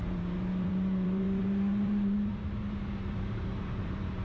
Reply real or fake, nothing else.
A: fake